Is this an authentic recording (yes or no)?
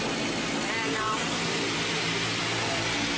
yes